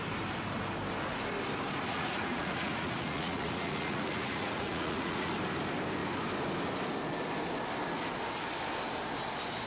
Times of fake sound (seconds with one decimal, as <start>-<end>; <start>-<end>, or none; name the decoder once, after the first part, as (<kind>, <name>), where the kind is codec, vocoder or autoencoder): 1.9-5.3 (vocoder, Vocos)